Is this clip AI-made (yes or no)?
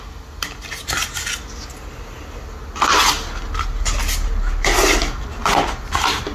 no